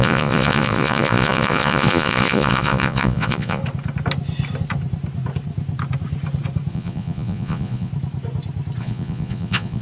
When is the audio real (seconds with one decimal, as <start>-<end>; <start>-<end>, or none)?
3.6-6.7; 7.9-8.8

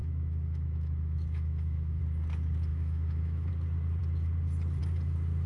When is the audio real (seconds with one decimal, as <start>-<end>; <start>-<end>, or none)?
2.0-2.7; 3.5-5.5

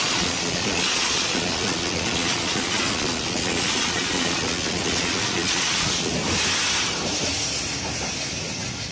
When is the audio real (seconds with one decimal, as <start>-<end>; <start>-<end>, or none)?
6.1-8.9

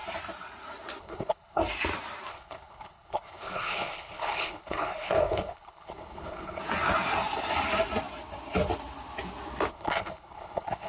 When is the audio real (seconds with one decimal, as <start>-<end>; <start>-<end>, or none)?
0.0-1.0; 1.6-2.3; 6.6-9.7

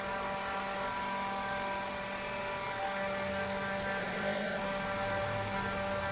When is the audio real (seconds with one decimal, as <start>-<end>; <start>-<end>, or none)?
0.0-4.0; 4.6-6.1